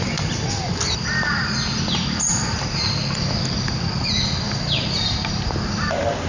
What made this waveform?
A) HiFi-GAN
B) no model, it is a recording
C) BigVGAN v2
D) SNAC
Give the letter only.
B